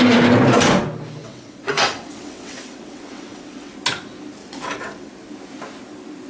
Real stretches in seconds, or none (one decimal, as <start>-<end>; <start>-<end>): 0.0-1.2; 3.7-4.4; 5.1-6.3